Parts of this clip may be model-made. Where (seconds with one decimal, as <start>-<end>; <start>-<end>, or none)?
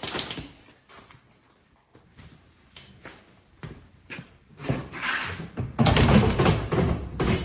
1.9-6.0